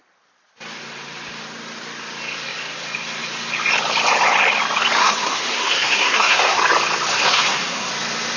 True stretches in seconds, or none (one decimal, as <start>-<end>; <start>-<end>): 0.0-5.0; 6.6-7.1; 7.9-8.4